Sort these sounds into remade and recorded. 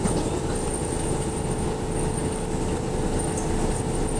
recorded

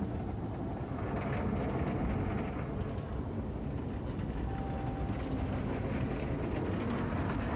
recorded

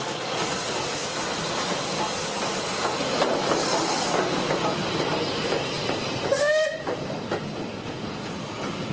recorded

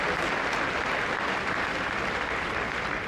recorded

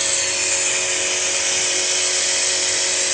recorded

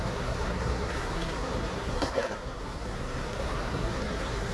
remade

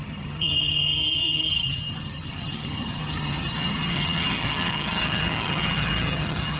remade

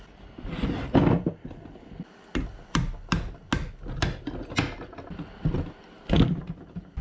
recorded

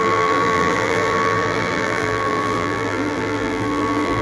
remade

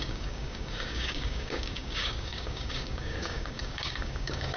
remade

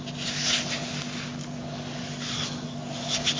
recorded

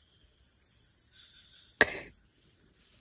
recorded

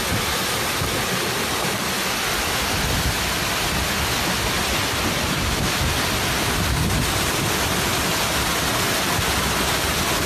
recorded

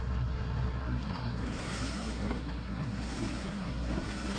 remade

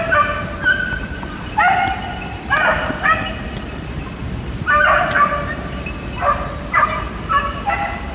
recorded